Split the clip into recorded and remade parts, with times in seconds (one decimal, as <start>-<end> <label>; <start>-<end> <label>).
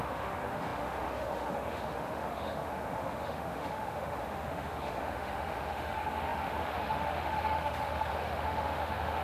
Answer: 0.0-9.2 remade